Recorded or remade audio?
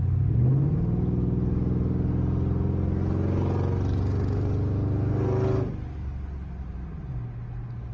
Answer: recorded